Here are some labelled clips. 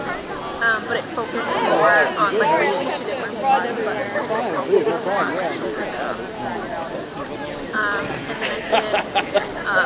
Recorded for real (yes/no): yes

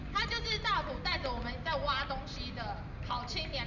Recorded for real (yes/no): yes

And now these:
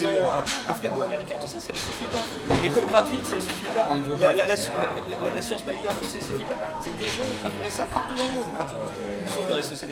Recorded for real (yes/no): no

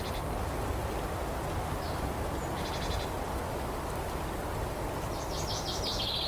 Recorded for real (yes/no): yes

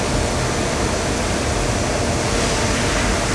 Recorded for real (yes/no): yes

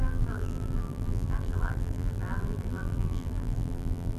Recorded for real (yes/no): no